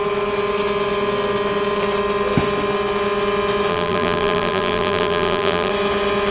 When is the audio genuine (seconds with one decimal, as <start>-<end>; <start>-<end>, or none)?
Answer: 0.0-3.7; 5.7-6.3